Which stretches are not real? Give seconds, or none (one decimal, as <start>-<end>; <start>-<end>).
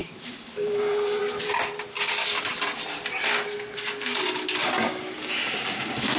0.0-1.2; 4.6-6.2